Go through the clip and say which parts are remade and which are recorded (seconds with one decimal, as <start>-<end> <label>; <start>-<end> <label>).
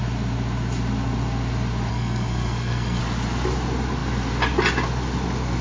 0.0-1.9 recorded; 1.9-3.0 remade; 3.0-5.6 recorded